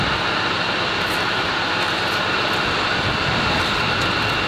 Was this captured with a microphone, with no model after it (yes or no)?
yes